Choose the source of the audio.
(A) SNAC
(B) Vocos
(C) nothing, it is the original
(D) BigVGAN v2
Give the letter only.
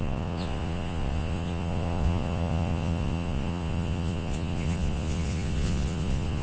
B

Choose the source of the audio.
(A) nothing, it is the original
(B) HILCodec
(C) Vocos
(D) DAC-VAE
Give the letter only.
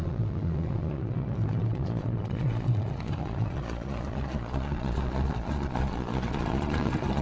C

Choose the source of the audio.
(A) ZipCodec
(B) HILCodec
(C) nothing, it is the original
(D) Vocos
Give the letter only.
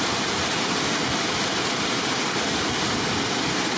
C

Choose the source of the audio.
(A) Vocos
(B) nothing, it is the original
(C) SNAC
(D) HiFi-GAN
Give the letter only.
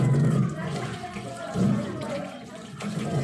A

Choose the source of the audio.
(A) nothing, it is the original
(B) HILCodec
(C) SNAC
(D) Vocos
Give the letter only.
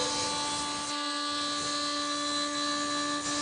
A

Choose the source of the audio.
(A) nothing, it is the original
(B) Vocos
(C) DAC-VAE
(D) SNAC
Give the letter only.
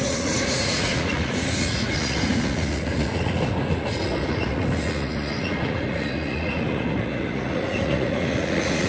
B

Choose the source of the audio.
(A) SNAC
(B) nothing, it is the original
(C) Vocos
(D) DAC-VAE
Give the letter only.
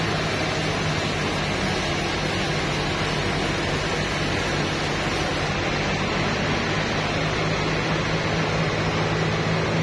B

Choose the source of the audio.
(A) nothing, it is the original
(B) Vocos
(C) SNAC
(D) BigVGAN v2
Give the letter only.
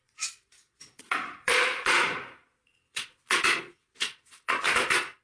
B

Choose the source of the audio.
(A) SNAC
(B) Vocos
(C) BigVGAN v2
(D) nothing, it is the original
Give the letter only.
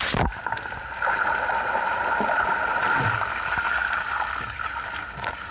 D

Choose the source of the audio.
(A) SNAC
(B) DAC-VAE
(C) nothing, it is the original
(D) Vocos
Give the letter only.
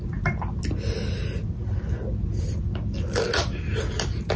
C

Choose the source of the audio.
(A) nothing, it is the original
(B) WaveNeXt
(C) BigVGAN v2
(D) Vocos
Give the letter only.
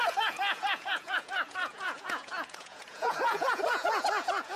D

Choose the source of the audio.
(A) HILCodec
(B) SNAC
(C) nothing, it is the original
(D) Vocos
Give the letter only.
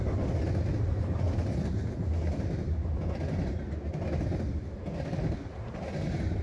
C